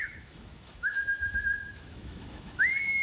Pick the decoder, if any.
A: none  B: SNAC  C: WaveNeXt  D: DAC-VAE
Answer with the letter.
D